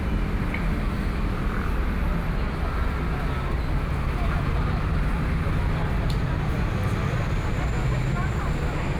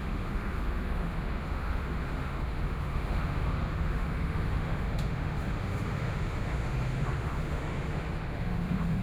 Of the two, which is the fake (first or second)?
second